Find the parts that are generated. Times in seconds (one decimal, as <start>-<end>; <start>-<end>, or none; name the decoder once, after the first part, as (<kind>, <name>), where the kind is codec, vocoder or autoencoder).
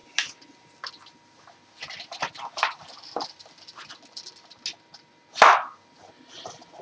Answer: none